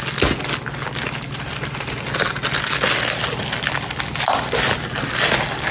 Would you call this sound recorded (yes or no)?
yes